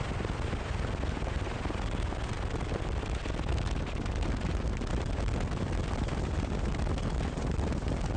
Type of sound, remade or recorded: recorded